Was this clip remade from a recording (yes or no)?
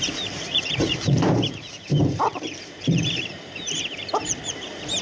yes